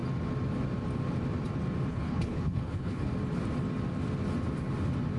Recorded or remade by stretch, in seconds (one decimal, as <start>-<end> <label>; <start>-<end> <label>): 0.0-1.9 recorded; 1.9-3.1 remade; 3.1-5.2 recorded